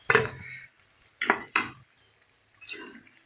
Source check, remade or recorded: recorded